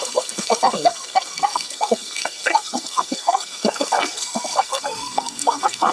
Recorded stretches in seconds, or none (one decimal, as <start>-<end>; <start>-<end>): none